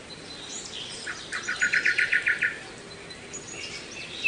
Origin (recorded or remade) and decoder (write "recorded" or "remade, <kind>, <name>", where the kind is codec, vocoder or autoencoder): remade, vocoder, BigVGAN v2